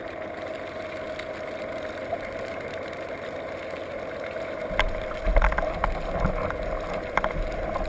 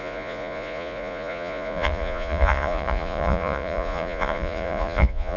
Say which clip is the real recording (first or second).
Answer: first